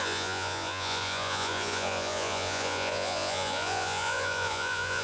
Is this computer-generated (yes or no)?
yes